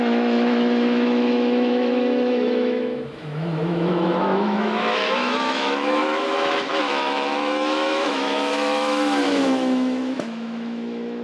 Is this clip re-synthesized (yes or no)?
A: yes